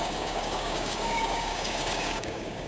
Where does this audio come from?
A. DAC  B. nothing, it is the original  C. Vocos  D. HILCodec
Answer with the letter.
A